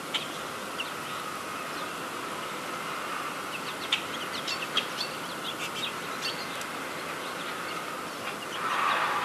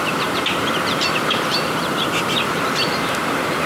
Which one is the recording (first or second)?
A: first